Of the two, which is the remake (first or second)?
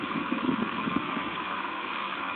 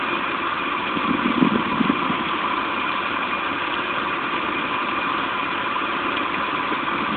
first